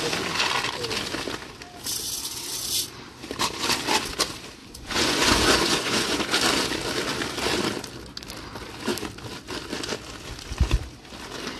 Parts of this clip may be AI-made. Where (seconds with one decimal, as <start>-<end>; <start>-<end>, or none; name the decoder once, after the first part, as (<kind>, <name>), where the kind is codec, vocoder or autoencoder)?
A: 4.6-6.2 (vocoder, Vocos)